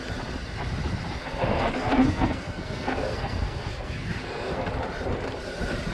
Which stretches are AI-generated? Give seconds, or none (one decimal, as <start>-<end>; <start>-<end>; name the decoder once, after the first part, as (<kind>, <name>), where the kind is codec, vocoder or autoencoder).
1.2-4.7 (codec, SNAC)

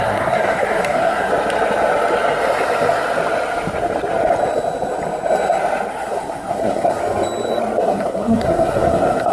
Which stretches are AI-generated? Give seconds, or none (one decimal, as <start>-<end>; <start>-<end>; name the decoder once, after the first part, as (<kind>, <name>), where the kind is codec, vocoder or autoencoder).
0.0-1.3 (codec, SNAC); 5.9-7.0; 7.8-9.3

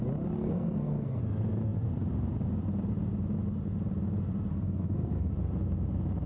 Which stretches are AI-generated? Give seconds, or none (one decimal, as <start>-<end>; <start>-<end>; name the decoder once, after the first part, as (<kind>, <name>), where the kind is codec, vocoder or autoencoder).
0.4-1.2 (codec, SNAC); 4.5-5.3

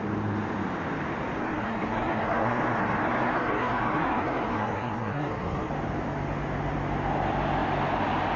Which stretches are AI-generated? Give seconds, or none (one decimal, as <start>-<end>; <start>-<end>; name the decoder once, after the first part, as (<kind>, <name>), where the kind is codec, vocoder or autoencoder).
1.4-5.7 (codec, SNAC)

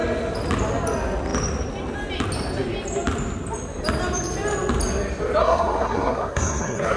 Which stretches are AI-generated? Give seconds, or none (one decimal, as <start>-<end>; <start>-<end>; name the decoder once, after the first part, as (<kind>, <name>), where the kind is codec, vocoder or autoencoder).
5.4-7.0 (codec, SNAC)

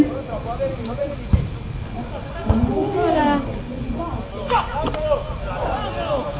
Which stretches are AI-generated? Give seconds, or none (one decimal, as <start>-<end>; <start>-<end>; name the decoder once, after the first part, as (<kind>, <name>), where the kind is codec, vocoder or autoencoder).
none